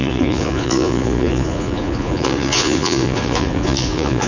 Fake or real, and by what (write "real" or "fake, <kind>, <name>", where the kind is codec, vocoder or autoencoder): fake, vocoder, Vocos